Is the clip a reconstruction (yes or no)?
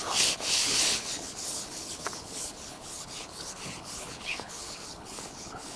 yes